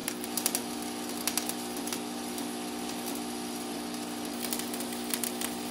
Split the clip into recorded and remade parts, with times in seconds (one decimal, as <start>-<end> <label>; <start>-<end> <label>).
0.0-5.7 recorded

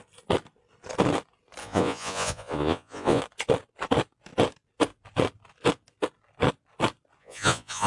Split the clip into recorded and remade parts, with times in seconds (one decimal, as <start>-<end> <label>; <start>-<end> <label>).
0.0-1.6 recorded; 1.6-3.2 remade; 3.2-7.2 recorded; 7.2-7.9 remade

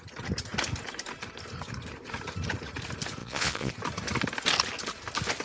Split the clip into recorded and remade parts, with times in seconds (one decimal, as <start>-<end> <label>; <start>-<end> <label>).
0.0-3.2 recorded; 3.2-3.7 remade; 3.7-5.4 recorded

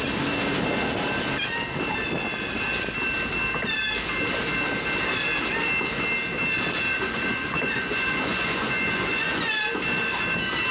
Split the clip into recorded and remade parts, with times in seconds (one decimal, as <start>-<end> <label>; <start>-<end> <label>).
0.0-6.9 recorded; 6.9-9.6 remade; 9.6-10.7 recorded

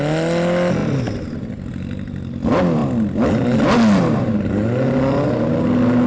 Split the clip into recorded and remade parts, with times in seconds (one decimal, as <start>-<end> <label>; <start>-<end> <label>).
0.0-6.1 recorded

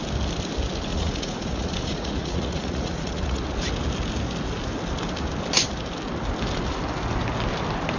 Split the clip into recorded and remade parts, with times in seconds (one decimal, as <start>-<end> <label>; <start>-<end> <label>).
0.0-0.9 recorded; 0.9-3.4 remade; 3.4-8.0 recorded

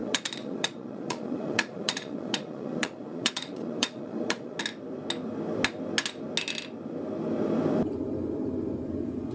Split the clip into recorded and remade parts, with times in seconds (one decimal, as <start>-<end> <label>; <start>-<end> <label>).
0.0-4.6 remade; 4.6-9.3 recorded

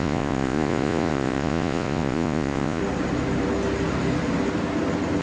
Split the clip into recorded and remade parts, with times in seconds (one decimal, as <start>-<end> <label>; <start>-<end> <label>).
0.0-2.8 remade; 2.8-5.2 recorded